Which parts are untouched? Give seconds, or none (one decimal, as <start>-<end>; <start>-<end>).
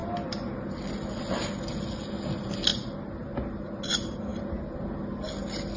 0.0-5.8